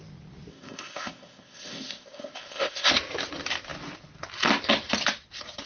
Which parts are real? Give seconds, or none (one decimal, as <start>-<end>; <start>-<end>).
0.0-0.5; 2.9-5.7